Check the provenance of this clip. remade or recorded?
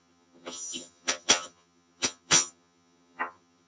remade